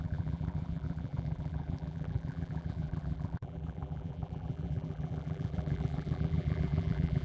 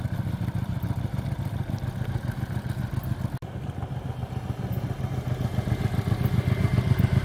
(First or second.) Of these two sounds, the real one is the second